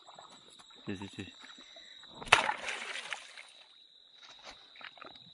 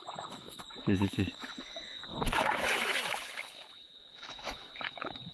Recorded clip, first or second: first